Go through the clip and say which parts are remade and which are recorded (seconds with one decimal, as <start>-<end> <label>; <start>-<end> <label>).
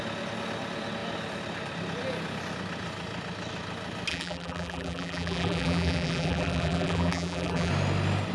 0.0-4.1 recorded; 4.1-7.7 remade; 7.7-8.3 recorded